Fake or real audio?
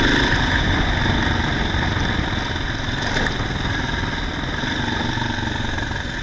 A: real